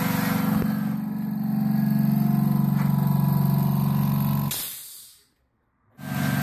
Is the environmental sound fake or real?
real